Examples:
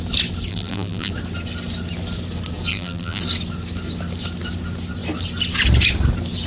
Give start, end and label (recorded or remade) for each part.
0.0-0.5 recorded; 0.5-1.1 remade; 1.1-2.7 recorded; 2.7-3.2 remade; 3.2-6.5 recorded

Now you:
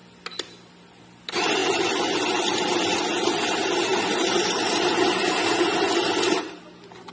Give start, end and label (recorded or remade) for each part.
0.0-7.1 recorded

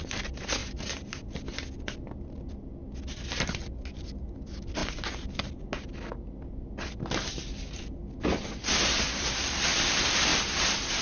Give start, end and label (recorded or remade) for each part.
0.0-0.6 recorded; 0.6-1.3 remade; 1.3-4.8 recorded; 4.8-5.4 remade; 5.4-10.3 recorded; 10.3-11.0 remade